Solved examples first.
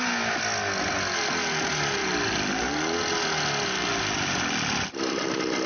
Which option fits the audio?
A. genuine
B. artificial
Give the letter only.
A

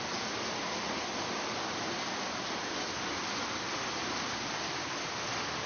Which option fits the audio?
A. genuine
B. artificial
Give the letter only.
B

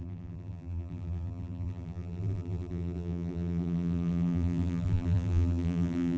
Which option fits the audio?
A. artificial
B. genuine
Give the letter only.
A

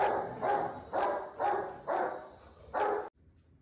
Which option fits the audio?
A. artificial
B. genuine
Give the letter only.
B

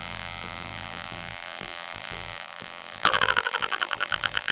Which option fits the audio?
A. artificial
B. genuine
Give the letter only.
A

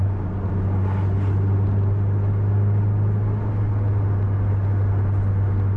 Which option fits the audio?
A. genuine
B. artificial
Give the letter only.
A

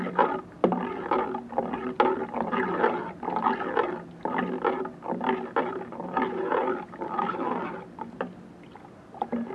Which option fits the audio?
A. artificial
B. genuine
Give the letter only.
B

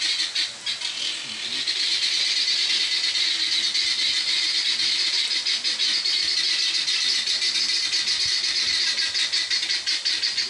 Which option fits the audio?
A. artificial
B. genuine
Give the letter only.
B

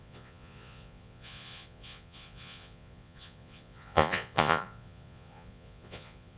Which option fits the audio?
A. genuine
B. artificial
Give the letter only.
B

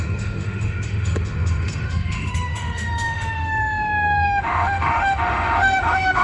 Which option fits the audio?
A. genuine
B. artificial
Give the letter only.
B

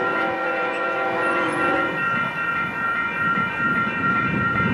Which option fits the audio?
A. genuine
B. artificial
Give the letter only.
B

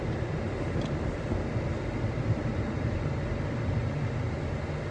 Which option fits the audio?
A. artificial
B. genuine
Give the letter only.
B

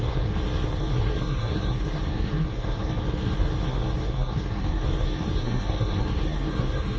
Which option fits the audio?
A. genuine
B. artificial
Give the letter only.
B